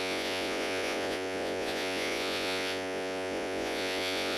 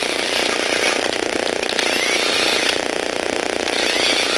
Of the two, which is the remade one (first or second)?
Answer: first